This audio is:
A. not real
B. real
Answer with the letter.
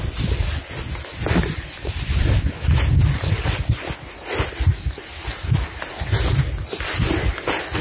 B